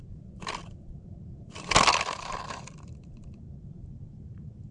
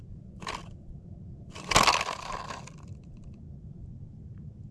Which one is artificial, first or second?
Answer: first